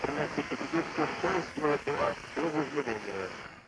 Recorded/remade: remade